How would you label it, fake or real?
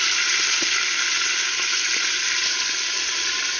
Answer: real